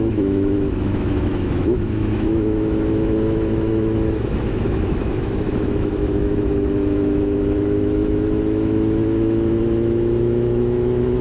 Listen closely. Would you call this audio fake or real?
fake